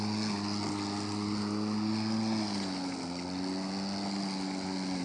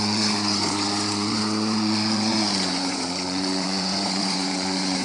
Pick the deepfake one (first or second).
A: second